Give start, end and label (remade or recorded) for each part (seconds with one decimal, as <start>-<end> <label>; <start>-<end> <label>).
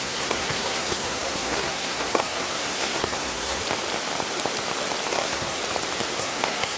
0.0-3.6 remade; 3.6-5.1 recorded; 5.1-5.6 remade; 5.6-6.2 recorded; 6.2-6.8 remade